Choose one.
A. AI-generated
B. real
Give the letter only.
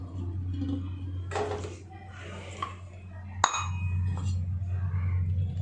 B